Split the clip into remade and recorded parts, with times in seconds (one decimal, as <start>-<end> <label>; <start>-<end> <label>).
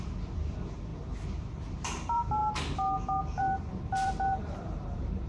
0.0-0.9 remade; 0.9-1.5 recorded; 1.5-2.4 remade; 2.4-3.2 recorded; 3.2-5.3 remade